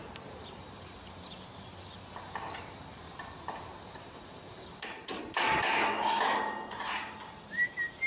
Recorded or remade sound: remade